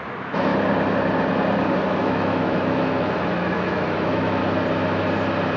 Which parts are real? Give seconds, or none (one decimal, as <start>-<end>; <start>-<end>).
0.5-1.9; 4.4-5.6

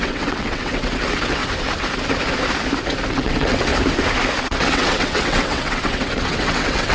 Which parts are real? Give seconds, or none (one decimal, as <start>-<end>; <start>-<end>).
1.4-3.1; 3.7-4.4

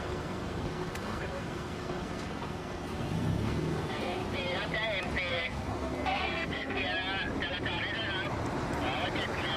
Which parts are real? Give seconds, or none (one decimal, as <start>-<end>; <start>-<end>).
4.2-5.3; 6.8-9.6

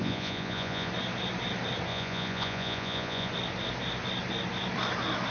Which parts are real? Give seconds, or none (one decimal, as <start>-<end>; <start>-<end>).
0.9-1.9; 3.3-5.3

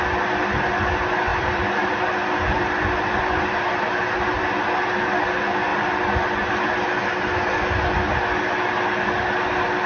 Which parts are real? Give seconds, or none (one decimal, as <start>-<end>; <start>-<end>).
0.0-1.3; 4.5-9.9

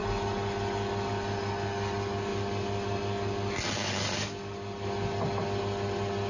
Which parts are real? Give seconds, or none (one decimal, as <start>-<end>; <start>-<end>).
0.0-6.3